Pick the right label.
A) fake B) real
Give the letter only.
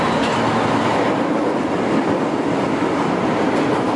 B